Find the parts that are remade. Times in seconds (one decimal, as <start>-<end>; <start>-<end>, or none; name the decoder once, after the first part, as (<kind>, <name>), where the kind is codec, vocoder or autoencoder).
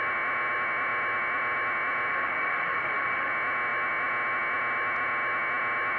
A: 2.1-3.3 (autoencoder, DAC-VAE)